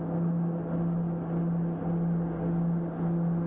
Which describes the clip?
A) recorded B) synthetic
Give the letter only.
A